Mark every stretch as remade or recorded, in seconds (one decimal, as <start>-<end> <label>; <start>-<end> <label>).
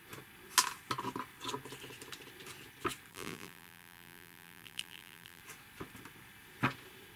0.0-3.1 recorded; 3.1-5.4 remade; 5.4-7.2 recorded